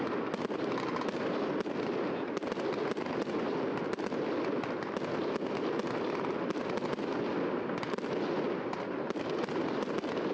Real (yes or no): yes